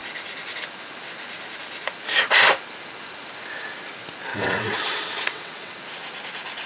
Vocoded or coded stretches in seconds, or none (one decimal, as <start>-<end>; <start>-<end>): 4.3-5.8